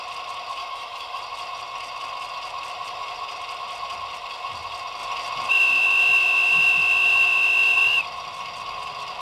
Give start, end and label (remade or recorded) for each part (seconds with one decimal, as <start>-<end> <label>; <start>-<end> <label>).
0.0-0.6 recorded; 0.6-1.2 remade; 1.2-9.2 recorded